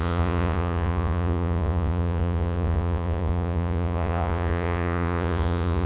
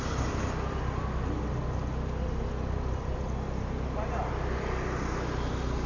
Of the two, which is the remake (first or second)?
first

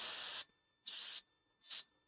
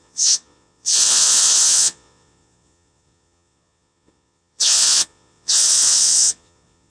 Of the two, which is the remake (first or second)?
second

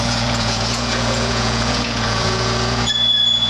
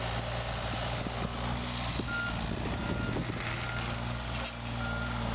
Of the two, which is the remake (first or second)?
first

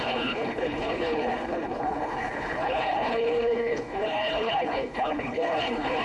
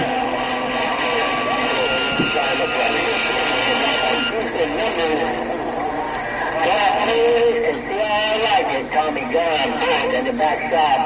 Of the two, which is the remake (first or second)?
first